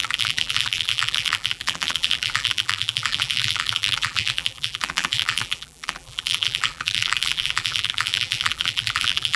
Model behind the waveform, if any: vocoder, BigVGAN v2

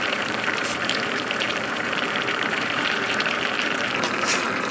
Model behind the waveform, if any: vocoder, BigVGAN v2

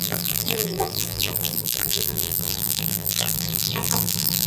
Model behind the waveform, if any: vocoder, BigVGAN v2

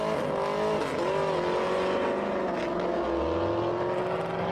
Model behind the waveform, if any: none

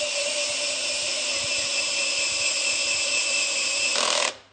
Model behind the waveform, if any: vocoder, BigVGAN v2